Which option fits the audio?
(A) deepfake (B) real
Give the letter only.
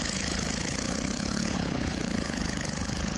A